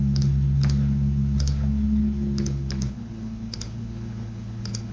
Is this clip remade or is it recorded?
remade